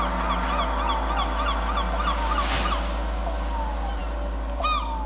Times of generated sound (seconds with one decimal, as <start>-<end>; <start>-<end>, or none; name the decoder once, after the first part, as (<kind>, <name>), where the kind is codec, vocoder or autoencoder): none